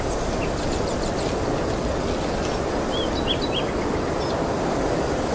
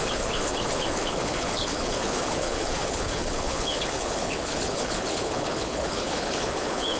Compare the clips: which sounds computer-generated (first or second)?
second